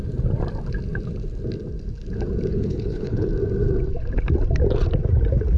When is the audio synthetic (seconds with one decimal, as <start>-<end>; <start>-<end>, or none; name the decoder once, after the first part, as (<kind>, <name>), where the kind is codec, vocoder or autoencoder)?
2.5-3.3 (codec, HILCodec)